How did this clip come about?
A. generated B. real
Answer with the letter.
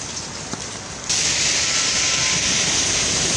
B